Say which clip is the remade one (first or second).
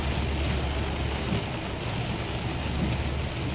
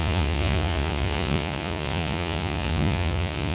second